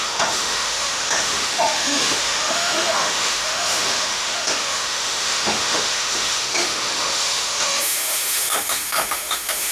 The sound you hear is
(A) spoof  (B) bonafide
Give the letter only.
A